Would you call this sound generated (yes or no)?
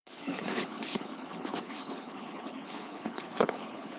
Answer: yes